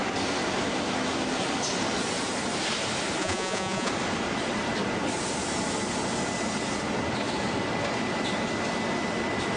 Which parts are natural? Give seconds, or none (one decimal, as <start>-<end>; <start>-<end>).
0.0-3.2; 3.9-9.6